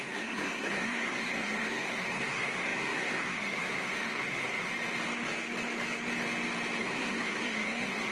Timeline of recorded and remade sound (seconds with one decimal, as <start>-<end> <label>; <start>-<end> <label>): 0.0-4.7 remade; 4.7-6.8 recorded; 6.8-8.1 remade